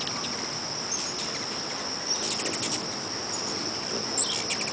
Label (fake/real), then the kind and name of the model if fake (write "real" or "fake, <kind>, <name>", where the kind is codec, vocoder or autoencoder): real